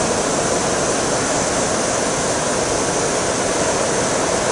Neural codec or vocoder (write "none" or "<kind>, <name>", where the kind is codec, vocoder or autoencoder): none